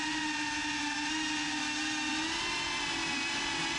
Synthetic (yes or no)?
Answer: no